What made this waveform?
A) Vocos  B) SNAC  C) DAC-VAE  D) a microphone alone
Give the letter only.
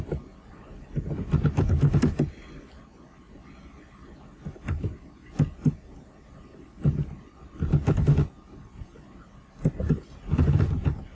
D